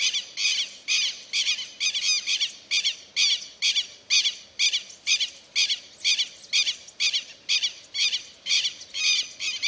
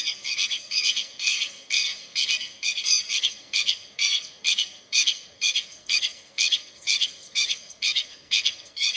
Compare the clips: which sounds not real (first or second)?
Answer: second